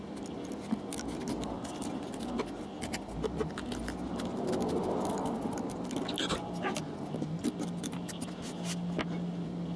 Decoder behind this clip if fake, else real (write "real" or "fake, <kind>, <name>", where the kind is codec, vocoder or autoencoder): real